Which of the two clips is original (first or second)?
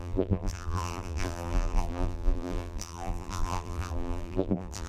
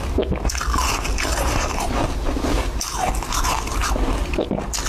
second